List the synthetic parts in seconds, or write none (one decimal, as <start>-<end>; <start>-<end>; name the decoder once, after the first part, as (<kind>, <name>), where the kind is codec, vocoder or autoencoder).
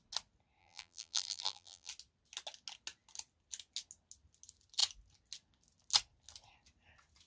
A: 0.6-1.9 (vocoder, BigVGAN v2)